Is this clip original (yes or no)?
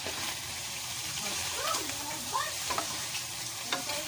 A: no